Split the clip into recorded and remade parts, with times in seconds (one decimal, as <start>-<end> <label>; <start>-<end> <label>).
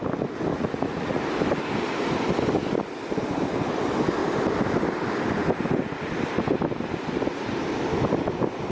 0.0-0.5 recorded; 0.5-1.2 remade; 1.2-8.7 recorded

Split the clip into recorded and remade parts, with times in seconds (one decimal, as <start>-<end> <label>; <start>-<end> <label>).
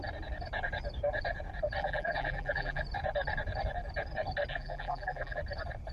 0.0-1.8 recorded; 1.8-2.8 remade; 2.8-4.5 recorded; 4.5-5.4 remade; 5.4-5.9 recorded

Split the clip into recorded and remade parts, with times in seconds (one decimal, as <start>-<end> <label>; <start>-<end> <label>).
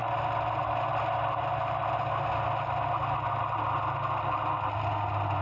0.0-5.4 recorded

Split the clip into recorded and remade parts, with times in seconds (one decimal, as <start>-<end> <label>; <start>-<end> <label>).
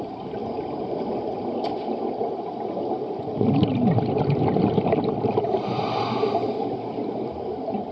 0.0-7.9 recorded